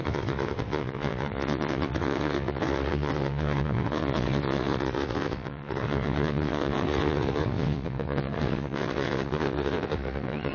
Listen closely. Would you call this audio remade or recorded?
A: remade